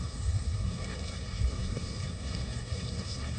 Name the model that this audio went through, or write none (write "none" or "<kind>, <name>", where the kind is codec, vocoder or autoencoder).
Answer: codec, SNAC